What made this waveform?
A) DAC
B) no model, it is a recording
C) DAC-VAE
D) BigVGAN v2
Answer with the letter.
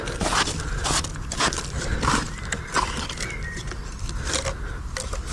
B